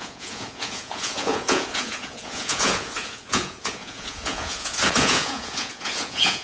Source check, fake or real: fake